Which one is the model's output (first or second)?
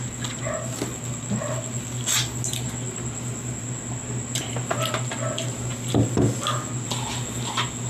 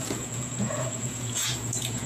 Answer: second